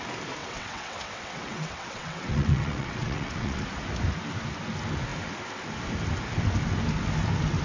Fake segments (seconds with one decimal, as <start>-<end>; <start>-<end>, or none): 0.4-3.6